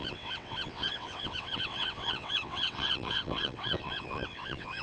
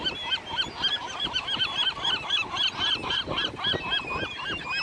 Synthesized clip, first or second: first